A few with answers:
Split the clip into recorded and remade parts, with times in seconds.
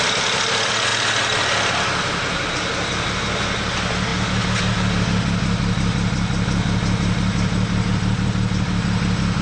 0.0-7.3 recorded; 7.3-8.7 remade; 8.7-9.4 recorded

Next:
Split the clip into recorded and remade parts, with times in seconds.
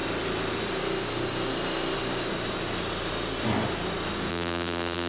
0.0-4.3 recorded; 4.3-5.1 remade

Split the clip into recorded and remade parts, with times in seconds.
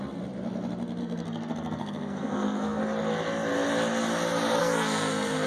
0.0-1.0 recorded; 1.0-2.8 remade; 2.8-4.6 recorded; 4.6-5.5 remade